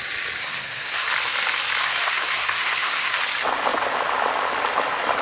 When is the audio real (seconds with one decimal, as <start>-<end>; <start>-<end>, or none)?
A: 0.0-0.4; 1.1-1.8; 3.2-5.2

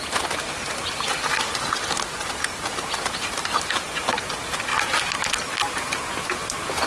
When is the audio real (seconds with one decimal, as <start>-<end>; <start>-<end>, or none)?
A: 0.0-6.9